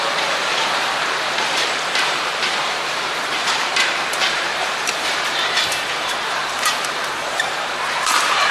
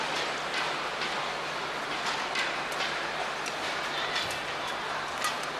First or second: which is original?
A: second